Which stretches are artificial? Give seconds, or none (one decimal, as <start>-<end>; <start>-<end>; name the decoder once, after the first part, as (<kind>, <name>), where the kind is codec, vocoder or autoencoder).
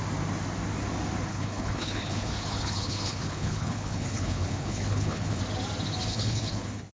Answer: 1.3-5.4 (codec, HILCodec); 6.1-6.9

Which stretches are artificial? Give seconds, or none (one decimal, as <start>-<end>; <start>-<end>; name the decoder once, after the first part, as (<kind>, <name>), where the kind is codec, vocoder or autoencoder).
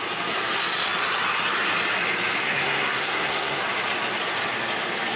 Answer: 2.4-3.6 (codec, SNAC)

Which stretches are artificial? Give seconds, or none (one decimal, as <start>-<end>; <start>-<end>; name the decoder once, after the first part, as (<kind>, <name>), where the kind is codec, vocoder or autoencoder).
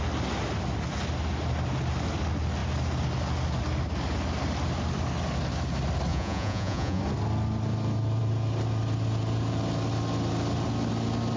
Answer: 6.1-7.0 (vocoder, Vocos)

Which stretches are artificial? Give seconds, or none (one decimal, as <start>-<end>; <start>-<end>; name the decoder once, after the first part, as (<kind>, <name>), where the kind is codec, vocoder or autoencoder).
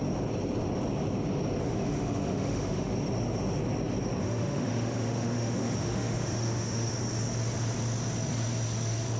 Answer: 1.6-2.9 (autoencoder, DAC-VAE); 4.2-6.9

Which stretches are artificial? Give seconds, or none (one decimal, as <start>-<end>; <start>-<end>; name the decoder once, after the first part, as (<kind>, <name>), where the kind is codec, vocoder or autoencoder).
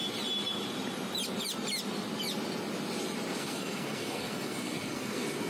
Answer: 3.3-5.5 (codec, SNAC)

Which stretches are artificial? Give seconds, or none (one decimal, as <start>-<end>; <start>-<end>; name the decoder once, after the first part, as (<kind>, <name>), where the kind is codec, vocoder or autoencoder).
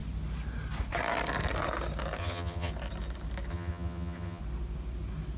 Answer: 2.2-2.7 (vocoder, HiFi-GAN); 3.5-4.4